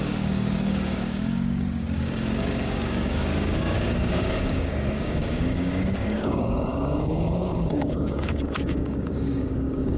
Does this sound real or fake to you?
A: fake